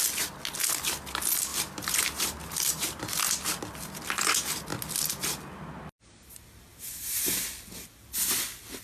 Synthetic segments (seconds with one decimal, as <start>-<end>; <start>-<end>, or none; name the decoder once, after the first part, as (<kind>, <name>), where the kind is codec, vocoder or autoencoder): 1.5-3.2 (vocoder, BigVGAN v2); 6.7-7.3